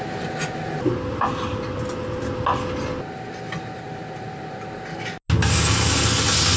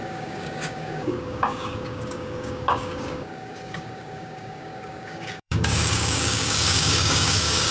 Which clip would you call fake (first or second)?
second